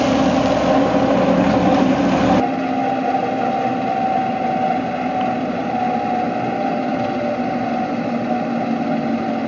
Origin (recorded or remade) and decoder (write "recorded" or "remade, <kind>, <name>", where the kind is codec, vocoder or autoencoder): recorded